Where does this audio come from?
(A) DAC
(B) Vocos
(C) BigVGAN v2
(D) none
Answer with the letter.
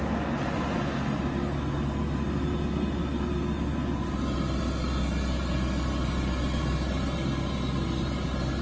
D